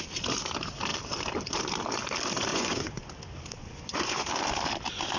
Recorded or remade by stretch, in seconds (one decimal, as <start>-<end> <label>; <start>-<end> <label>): 0.0-2.5 recorded; 2.5-3.1 remade; 3.1-3.6 recorded; 3.6-4.3 remade; 4.3-5.2 recorded